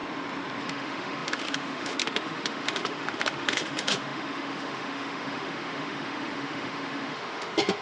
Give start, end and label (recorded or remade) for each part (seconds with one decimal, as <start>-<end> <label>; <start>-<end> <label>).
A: 0.0-0.6 recorded; 0.6-7.8 remade